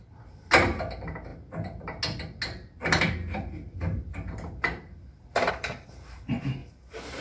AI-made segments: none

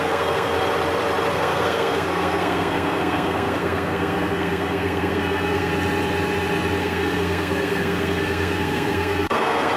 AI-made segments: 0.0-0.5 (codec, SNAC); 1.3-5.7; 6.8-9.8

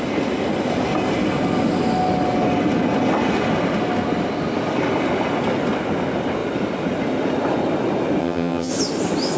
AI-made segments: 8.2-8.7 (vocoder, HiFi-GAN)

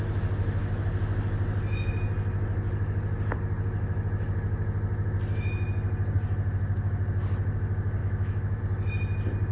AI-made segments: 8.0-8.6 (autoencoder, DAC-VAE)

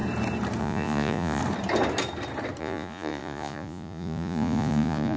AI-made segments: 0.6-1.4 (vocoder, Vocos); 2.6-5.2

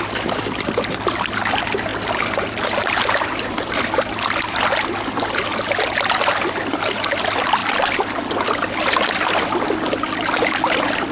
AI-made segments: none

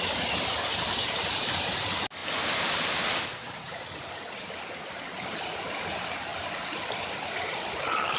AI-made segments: none